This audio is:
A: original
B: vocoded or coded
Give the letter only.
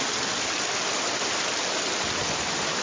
A